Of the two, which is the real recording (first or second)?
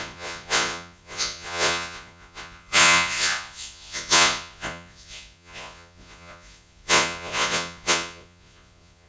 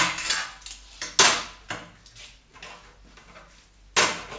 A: second